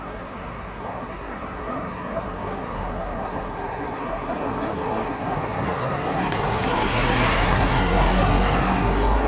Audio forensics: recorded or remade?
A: remade